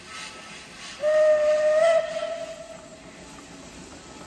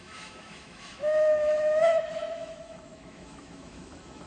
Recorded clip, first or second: first